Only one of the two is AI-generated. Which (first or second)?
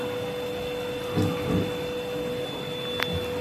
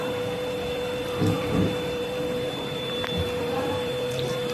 second